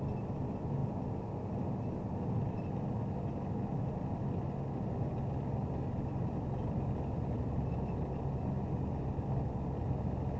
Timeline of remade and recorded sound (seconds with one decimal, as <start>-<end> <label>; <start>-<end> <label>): 0.0-10.4 recorded